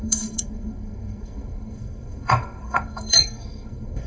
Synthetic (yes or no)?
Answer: yes